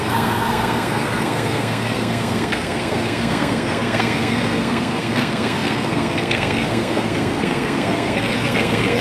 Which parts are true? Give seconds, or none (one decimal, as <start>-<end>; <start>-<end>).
none